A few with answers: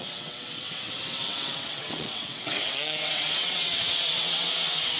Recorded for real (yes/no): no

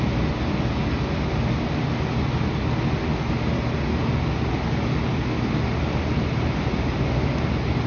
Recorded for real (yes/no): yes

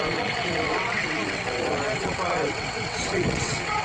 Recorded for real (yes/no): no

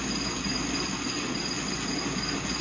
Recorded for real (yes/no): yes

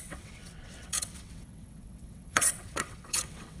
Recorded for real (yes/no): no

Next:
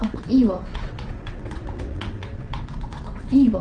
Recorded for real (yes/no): no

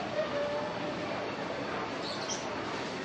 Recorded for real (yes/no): yes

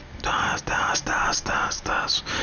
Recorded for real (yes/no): yes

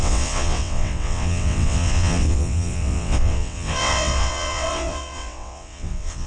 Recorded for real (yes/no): no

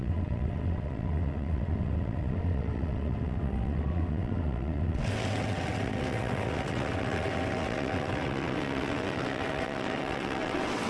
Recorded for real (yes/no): no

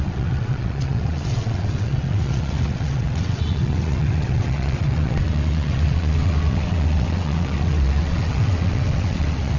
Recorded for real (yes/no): no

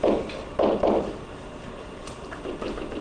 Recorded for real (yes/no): yes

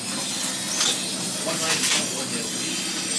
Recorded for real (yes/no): yes